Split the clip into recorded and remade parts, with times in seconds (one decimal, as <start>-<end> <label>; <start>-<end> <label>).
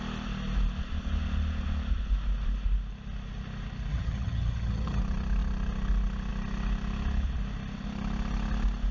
0.0-3.9 recorded; 3.9-5.0 remade; 5.0-8.9 recorded